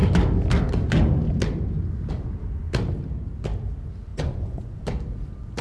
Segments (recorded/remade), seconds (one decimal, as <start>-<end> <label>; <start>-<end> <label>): 0.0-4.1 recorded; 4.1-4.8 remade; 4.8-5.6 recorded